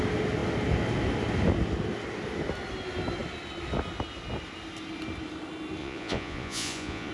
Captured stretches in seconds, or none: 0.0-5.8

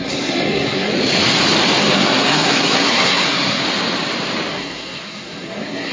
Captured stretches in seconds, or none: 0.9-1.8; 3.6-4.5

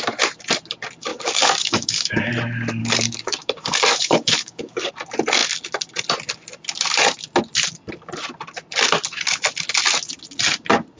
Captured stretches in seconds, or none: 0.0-1.1; 2.3-2.8; 4.9-11.0

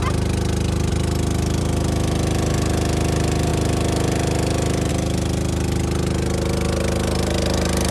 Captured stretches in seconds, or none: 0.0-7.9

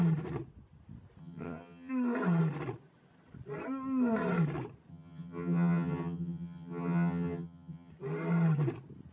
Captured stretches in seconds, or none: 0.0-1.2; 1.9-4.9; 7.9-9.1

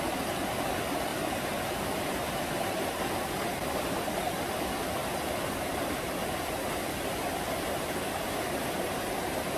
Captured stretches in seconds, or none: 0.0-1.1; 3.9-5.0; 9.1-9.6

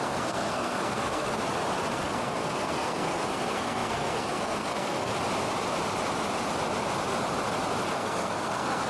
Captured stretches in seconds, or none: 1.4-1.9; 5.1-7.9